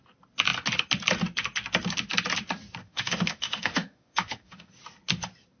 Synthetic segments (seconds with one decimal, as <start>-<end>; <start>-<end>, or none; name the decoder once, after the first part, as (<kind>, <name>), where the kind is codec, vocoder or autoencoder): 2.8-4.7 (autoencoder, DAC-VAE)